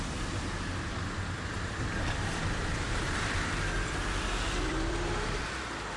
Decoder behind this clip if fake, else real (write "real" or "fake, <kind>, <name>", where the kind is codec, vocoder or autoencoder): fake, vocoder, BigVGAN v2